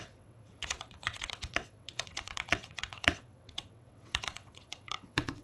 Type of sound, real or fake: fake